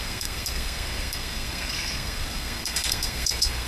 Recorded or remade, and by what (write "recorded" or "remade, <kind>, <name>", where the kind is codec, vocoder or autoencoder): remade, codec, SNAC